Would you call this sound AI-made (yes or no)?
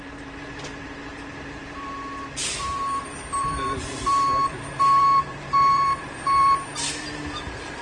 yes